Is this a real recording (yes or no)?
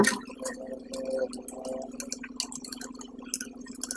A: yes